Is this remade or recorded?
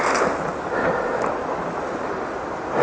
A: recorded